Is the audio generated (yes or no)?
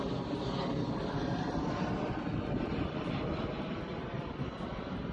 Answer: no